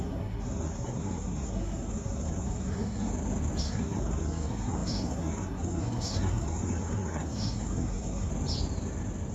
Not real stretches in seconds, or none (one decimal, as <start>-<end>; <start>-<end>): 0.0-3.1; 3.6-8.3